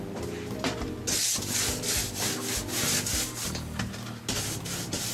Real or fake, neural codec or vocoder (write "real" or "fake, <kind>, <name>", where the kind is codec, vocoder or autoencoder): real